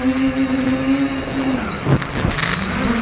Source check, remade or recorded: recorded